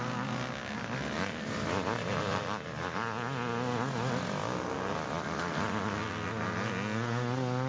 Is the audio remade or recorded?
recorded